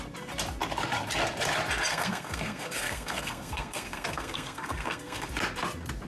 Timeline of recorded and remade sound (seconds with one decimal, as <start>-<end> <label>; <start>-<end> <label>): 0.0-1.9 recorded; 1.9-5.3 remade; 5.3-6.1 recorded